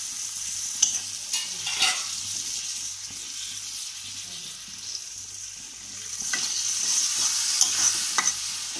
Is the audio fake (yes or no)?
no